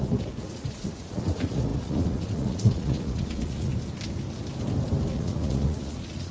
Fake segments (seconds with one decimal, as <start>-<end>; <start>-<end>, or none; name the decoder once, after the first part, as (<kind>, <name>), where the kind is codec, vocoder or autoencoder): 0.0-3.7 (vocoder, Vocos); 5.1-6.3